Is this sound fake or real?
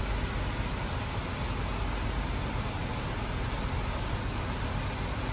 real